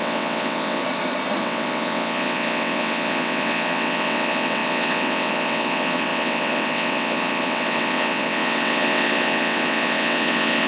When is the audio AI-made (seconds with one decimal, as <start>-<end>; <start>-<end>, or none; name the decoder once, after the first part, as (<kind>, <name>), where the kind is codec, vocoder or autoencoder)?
0.0-0.8 (vocoder, WaveNeXt); 1.4-10.7